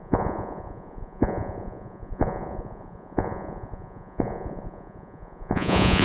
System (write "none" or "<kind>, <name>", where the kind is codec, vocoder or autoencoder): vocoder, Vocos